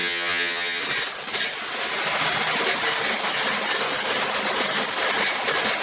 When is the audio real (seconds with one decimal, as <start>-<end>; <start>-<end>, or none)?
0.8-5.8